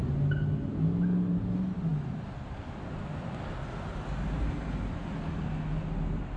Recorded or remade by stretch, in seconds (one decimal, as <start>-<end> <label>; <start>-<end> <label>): 0.0-6.4 recorded

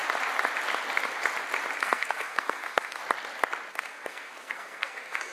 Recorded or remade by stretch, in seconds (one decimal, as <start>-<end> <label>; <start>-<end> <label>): 0.0-1.8 recorded; 1.8-3.0 remade; 3.0-3.7 recorded; 3.7-5.3 remade

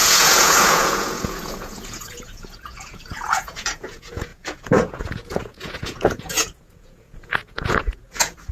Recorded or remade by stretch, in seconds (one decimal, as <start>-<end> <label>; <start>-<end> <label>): 0.0-8.5 remade

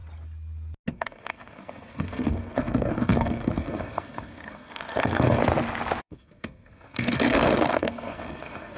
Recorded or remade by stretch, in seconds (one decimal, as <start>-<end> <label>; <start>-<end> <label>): 0.0-0.9 recorded; 0.9-5.4 remade; 5.4-6.0 recorded; 6.0-8.8 remade

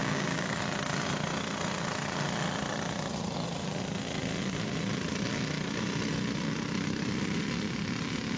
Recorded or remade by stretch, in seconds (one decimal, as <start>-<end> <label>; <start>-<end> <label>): 0.0-0.6 remade; 0.6-8.4 recorded

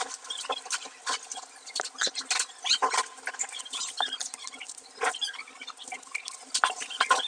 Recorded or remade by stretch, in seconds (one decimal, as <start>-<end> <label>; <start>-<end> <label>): 0.0-7.3 recorded

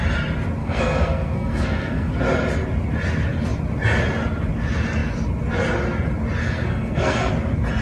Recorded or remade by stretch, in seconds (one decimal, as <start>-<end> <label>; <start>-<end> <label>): 0.0-0.6 recorded; 0.6-2.1 remade; 2.1-6.4 recorded; 6.4-7.3 remade; 7.3-7.8 recorded

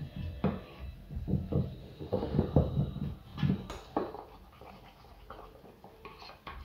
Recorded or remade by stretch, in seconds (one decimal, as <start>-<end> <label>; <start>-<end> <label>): 0.0-1.8 recorded; 1.8-2.4 remade; 2.4-6.6 recorded